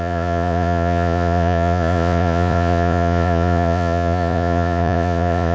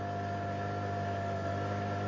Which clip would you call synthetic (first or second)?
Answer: first